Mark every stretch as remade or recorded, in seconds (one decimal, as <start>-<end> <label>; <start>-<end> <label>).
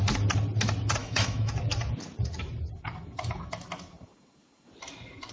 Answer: 0.0-1.0 recorded; 1.0-1.5 remade; 1.5-5.3 recorded